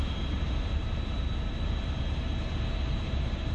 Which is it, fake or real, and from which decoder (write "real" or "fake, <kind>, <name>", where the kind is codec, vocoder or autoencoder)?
fake, vocoder, BigVGAN v2